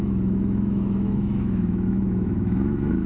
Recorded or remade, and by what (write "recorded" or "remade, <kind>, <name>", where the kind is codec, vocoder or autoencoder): remade, autoencoder, DAC-VAE